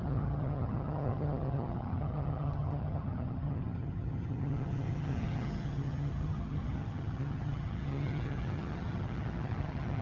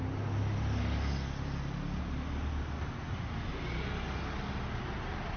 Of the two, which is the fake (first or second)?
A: first